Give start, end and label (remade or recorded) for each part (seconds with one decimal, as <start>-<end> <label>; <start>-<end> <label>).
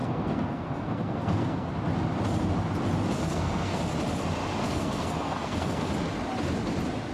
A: 0.0-1.7 remade; 1.7-3.2 recorded; 3.2-3.8 remade; 3.8-4.6 recorded; 4.6-5.9 remade; 5.9-7.1 recorded